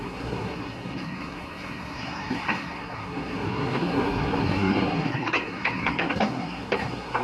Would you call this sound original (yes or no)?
no